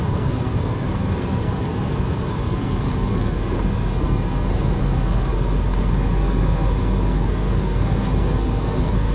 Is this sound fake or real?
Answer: fake